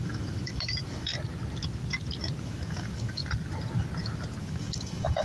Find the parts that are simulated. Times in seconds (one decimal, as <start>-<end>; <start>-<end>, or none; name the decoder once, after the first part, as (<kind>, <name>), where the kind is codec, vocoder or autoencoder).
0.0-1.1 (autoencoder, DAC-VAE); 2.4-3.2; 4.4-5.2